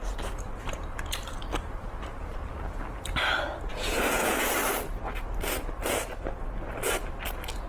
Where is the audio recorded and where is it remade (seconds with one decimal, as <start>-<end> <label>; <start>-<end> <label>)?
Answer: 0.0-3.7 recorded; 3.7-4.5 remade; 4.5-7.7 recorded